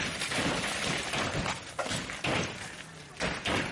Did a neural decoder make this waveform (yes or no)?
no